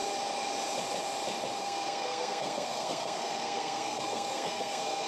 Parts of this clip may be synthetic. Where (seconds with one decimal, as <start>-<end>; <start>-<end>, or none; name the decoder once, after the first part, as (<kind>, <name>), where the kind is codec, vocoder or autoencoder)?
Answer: 1.6-5.1 (codec, SNAC)